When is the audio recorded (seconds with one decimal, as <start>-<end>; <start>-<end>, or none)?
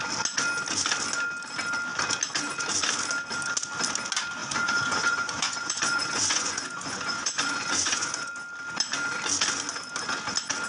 0.0-4.4; 8.3-10.7